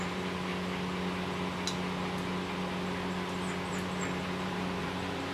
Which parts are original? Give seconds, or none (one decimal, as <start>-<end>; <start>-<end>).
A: 0.5-3.7